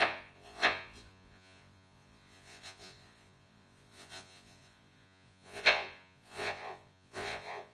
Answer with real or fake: fake